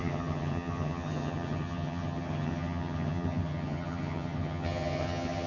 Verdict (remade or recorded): remade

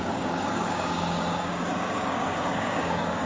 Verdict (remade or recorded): remade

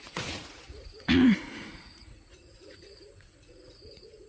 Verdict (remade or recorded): remade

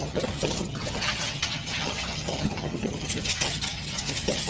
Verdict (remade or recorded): remade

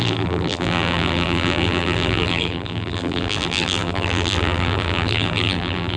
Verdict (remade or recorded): remade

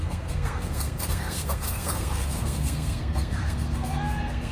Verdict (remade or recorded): remade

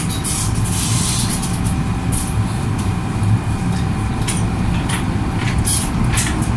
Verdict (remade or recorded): recorded